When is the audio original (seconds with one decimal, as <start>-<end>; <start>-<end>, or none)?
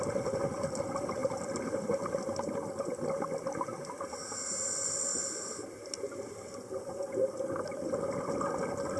0.0-9.0